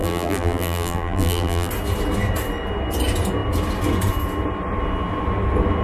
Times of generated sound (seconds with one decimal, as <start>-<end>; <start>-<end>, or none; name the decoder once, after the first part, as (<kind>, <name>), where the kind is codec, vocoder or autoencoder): 0.0-1.7 (vocoder, BigVGAN v2)